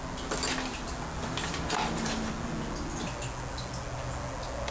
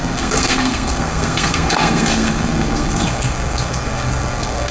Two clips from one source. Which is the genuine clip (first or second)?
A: first